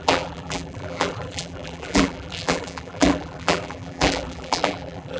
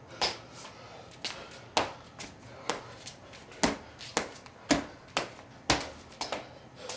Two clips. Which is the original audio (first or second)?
second